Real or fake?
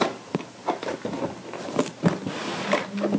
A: real